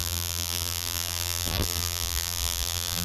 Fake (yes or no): yes